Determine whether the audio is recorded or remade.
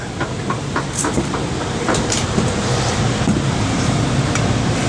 remade